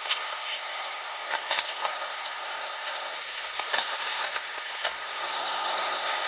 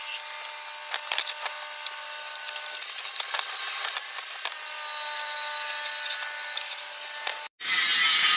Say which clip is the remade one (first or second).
first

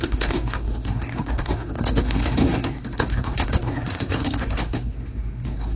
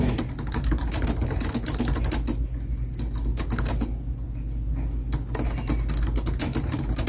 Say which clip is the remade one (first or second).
first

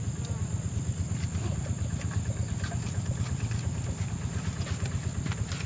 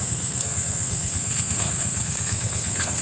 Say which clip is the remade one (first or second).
second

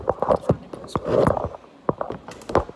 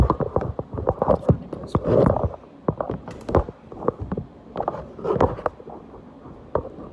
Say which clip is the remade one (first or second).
second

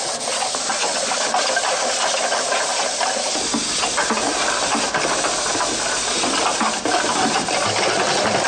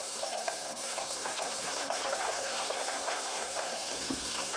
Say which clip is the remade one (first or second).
second